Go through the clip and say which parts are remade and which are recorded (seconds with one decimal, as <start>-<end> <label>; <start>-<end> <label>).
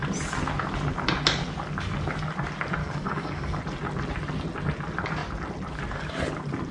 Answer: 0.0-2.8 recorded; 2.8-3.6 remade; 3.6-6.7 recorded